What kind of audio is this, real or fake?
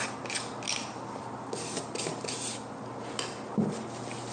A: real